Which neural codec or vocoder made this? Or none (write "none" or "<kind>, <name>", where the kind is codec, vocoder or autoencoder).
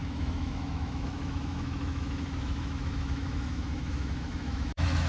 autoencoder, DAC-VAE